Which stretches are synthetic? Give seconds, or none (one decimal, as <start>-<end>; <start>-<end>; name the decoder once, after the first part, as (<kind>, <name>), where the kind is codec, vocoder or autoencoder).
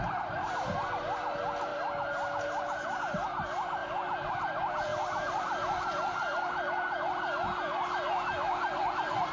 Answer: none